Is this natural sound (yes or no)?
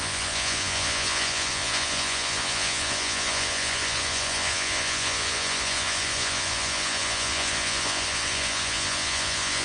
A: no